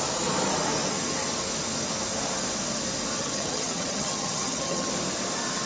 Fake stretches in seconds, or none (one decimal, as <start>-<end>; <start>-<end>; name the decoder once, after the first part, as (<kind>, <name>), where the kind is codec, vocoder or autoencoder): 3.2-4.9 (vocoder, HiFi-GAN)